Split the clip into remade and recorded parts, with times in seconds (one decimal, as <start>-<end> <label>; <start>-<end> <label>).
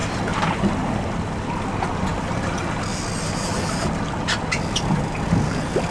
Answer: 0.0-5.9 recorded